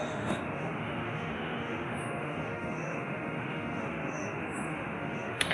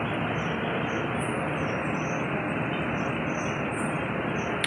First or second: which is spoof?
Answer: first